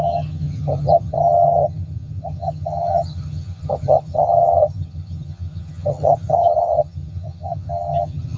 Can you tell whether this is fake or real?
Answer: fake